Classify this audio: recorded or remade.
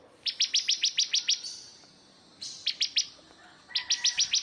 recorded